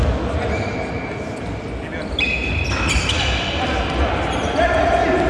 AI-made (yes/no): no